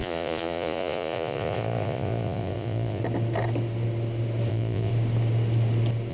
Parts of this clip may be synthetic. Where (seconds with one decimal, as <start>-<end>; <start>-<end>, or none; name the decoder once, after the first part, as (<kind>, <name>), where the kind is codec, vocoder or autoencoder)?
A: 0.0-3.0 (vocoder, Vocos); 4.5-4.9